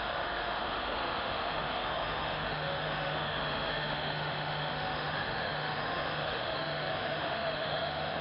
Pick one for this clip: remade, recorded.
remade